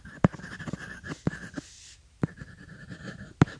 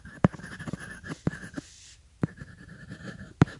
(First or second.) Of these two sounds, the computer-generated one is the second